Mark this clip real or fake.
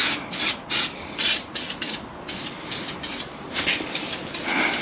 real